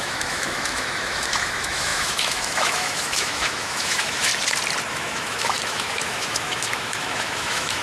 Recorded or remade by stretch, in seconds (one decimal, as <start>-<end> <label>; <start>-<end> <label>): 0.0-4.3 remade; 4.3-4.9 recorded; 4.9-7.8 remade